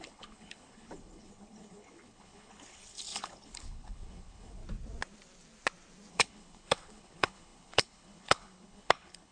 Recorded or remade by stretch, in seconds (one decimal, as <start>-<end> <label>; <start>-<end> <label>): 0.0-4.6 remade; 4.6-6.1 recorded; 6.1-9.3 remade